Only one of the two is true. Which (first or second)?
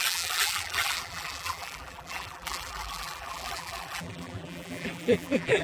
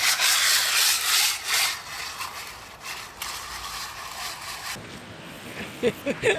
second